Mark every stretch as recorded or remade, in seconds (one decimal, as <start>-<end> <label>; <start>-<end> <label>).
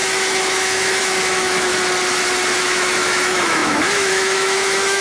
0.0-1.7 remade; 1.7-2.6 recorded; 2.6-5.0 remade